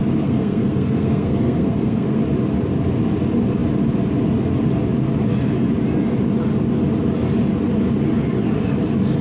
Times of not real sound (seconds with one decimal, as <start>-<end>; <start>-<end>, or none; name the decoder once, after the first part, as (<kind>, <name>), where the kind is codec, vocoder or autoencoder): 0.0-2.2 (codec, SNAC)